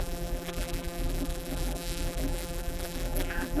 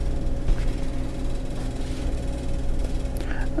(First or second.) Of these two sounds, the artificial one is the first